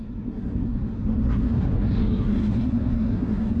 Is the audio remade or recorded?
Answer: remade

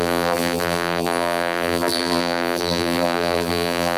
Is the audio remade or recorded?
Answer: remade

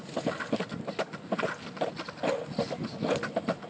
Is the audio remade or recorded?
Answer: recorded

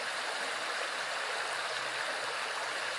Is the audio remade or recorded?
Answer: recorded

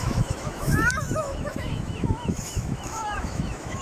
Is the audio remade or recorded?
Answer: remade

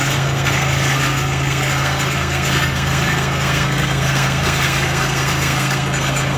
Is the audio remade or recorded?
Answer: remade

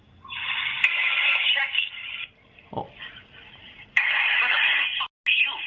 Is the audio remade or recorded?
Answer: recorded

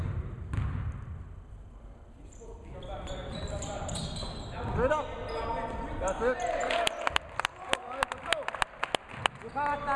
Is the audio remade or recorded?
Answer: recorded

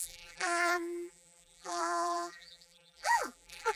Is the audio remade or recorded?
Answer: remade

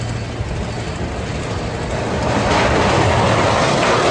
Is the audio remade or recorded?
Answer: recorded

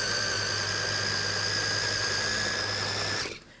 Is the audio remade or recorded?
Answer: recorded